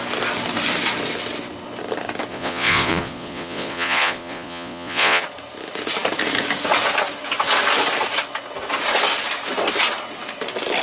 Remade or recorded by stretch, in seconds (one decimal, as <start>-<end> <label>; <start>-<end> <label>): 0.0-2.3 recorded; 2.3-5.2 remade; 5.2-10.8 recorded